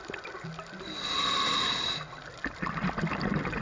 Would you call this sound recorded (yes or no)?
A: yes